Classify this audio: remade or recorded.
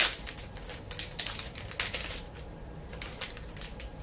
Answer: recorded